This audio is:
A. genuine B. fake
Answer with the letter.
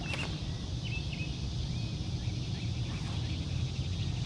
A